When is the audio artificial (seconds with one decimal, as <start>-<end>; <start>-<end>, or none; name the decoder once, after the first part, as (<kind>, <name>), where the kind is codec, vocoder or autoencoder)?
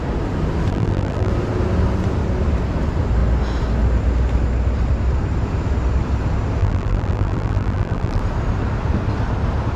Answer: 0.7-1.3 (vocoder, BigVGAN v2); 6.6-8.2